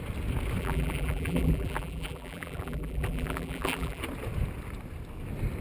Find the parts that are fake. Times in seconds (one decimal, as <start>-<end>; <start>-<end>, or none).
0.6-4.0